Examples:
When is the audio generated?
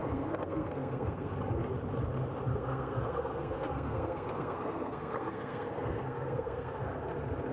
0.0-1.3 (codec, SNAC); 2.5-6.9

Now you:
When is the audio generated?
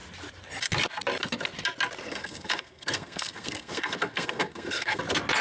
2.0-5.0 (codec, SNAC)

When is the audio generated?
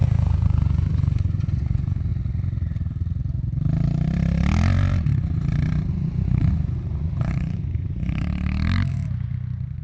0.0-2.1 (vocoder, Vocos); 5.9-8.2; 8.9-9.8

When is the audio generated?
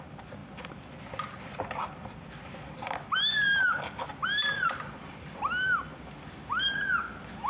none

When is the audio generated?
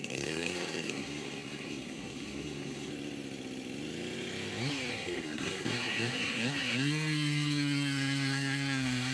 0.0-2.9 (codec, SNAC); 4.9-9.1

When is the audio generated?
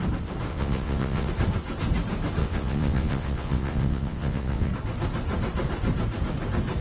0.5-1.3 (vocoder, WaveNeXt); 2.4-4.7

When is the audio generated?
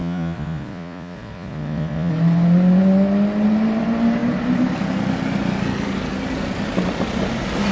0.0-2.1 (vocoder, Vocos)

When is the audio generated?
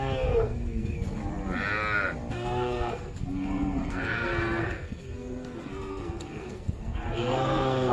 0.0-1.2 (codec, SNAC); 2.3-7.9